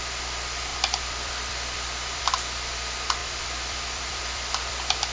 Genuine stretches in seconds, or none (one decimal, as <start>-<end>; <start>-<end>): 0.0-0.7; 2.2-3.2